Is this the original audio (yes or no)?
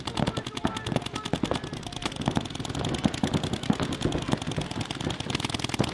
yes